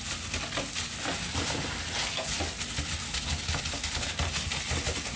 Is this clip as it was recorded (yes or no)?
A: yes